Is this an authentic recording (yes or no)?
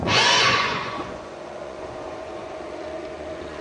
no